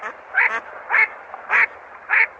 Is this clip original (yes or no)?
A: yes